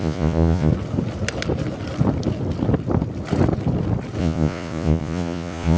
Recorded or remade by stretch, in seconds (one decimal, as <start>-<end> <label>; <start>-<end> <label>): 0.0-0.7 remade; 0.7-4.2 recorded; 4.2-5.8 remade